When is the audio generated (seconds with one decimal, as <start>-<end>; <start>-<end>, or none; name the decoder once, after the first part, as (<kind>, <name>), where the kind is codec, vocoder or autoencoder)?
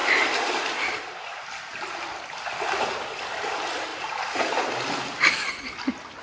none